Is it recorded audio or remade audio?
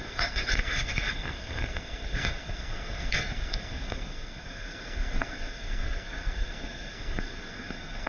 remade